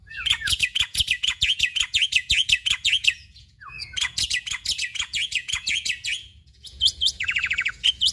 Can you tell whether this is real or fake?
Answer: fake